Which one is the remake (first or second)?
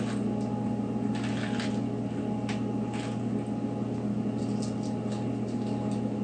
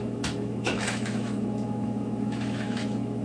second